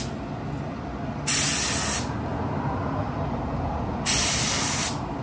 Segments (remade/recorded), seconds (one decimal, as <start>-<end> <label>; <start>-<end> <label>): 0.0-5.2 recorded